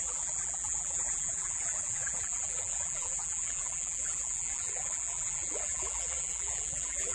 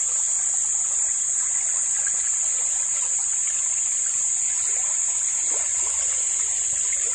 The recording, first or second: second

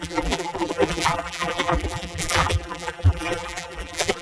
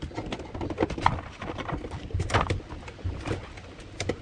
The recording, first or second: second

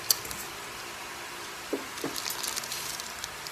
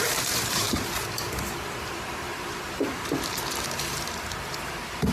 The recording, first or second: first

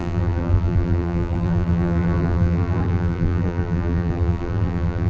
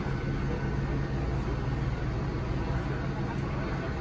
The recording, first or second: second